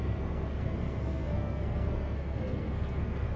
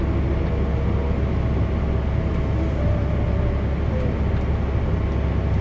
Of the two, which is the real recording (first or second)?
second